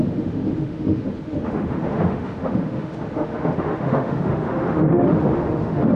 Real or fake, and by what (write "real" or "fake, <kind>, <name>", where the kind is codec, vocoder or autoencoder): fake, autoencoder, DAC-VAE